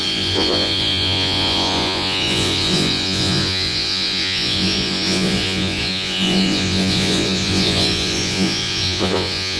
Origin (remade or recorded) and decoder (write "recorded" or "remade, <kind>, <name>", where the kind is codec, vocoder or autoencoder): remade, vocoder, Vocos